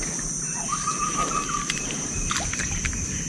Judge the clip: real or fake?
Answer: fake